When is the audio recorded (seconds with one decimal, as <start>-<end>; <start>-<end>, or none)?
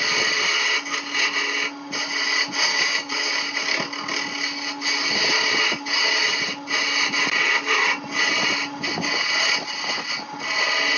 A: 0.0-2.7; 3.3-11.0